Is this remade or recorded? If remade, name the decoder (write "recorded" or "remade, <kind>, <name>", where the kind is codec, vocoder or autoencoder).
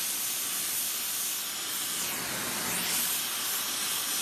recorded